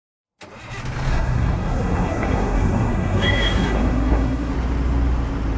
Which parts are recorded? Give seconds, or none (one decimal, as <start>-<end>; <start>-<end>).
0.0-1.1; 4.5-5.6